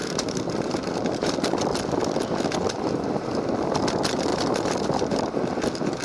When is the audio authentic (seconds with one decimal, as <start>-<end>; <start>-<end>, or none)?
3.4-4.3; 5.5-6.0